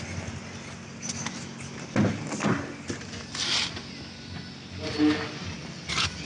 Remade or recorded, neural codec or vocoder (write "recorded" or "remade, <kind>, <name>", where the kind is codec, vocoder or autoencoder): recorded